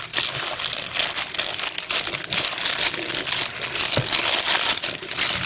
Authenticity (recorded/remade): recorded